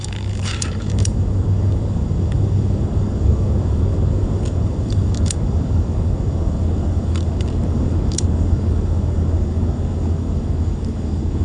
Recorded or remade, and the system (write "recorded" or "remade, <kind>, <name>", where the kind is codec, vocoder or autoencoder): remade, codec, DAC